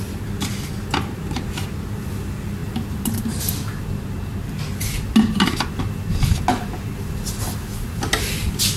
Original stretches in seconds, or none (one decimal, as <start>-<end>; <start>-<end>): 0.0-8.8